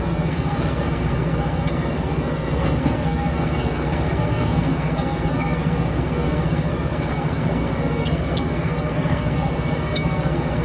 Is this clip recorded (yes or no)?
no